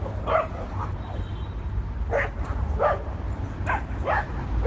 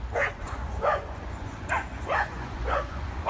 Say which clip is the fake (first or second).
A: second